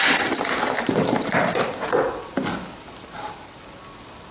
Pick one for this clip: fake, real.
real